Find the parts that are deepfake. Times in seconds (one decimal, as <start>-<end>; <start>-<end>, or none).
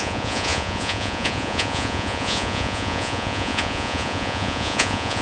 0.0-5.2